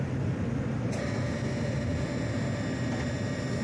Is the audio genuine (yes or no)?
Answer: yes